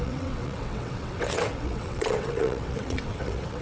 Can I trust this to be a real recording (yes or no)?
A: no